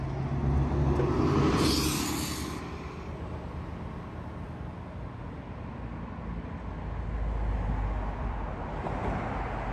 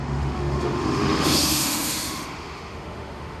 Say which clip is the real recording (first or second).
first